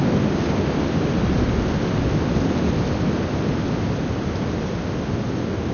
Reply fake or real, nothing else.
real